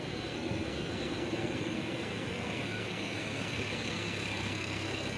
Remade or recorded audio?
remade